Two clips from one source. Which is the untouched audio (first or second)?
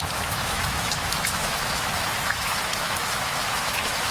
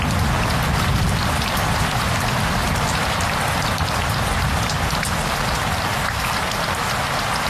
second